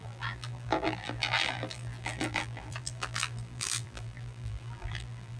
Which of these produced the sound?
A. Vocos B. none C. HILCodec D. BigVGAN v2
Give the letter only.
D